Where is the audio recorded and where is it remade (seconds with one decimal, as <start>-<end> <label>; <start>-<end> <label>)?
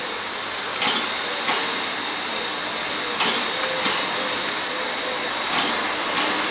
0.0-6.5 recorded